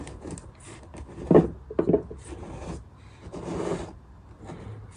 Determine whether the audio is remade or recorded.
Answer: recorded